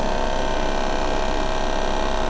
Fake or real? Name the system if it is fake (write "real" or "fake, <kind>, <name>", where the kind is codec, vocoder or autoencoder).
real